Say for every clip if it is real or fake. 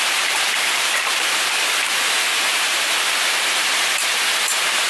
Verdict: fake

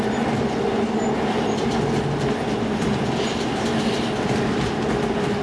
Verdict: real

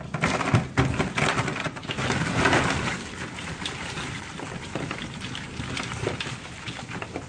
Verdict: real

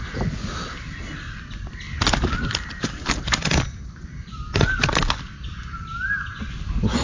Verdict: real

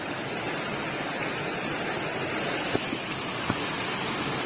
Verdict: real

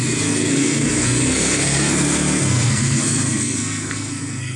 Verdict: fake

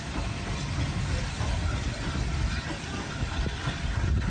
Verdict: real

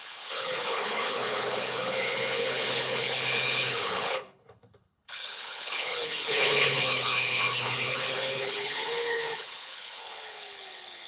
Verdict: fake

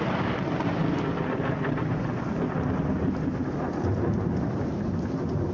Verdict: real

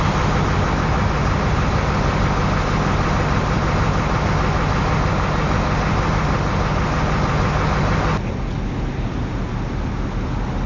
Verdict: real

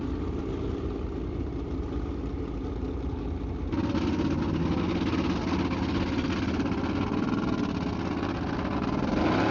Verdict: real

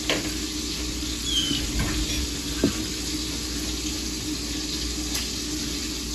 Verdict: real